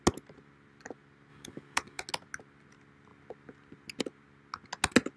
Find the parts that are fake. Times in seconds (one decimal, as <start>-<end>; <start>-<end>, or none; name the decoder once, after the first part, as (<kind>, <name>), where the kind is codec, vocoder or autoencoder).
1.3-2.0 (codec, DAC)